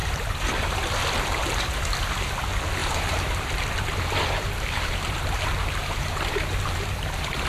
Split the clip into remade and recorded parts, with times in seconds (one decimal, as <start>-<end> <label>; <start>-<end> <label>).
0.0-0.9 remade; 0.9-2.8 recorded; 2.8-7.5 remade